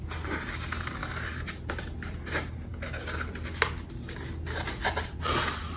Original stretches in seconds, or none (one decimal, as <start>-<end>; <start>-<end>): 0.0-5.8